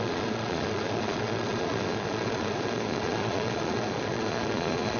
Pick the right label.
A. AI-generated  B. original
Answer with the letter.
A